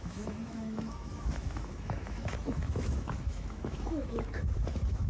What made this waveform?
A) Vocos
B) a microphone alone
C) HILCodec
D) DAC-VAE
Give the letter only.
D